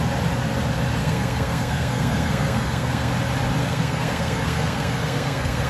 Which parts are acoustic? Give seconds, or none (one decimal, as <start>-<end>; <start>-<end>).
0.0-1.0; 3.1-3.6